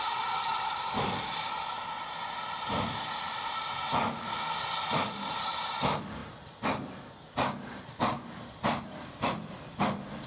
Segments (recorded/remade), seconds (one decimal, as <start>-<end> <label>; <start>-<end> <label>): 0.0-10.3 recorded